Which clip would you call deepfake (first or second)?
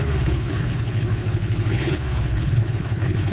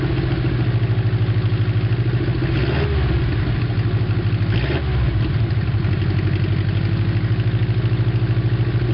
first